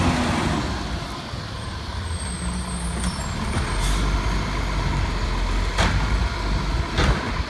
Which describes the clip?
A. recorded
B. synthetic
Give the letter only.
A